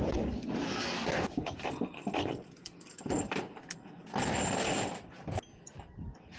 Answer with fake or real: real